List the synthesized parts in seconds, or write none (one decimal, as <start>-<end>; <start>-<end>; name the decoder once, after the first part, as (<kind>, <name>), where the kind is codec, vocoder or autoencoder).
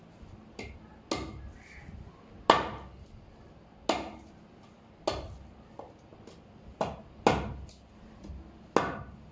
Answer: none